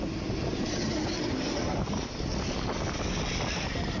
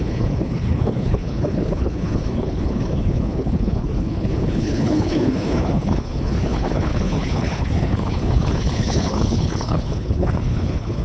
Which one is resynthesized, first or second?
second